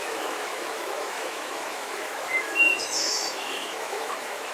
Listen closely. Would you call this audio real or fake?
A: fake